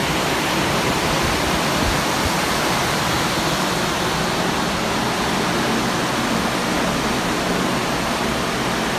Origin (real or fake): real